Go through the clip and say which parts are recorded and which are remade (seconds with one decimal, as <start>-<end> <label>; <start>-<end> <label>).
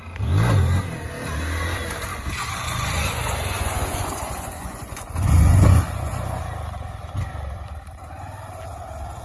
0.0-2.1 recorded; 2.1-6.4 remade; 6.4-9.2 recorded